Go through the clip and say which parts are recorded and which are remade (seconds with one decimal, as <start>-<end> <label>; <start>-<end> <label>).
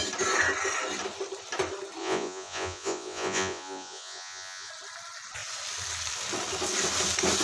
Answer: 0.0-2.0 recorded; 2.0-4.7 remade; 4.7-7.4 recorded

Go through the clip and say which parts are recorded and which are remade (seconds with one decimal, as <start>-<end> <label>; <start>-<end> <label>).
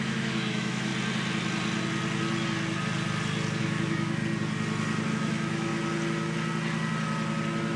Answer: 0.0-0.9 remade; 0.9-3.6 recorded; 3.6-4.2 remade; 4.2-5.1 recorded; 5.1-5.7 remade; 5.7-7.8 recorded